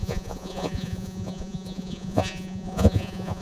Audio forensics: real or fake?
fake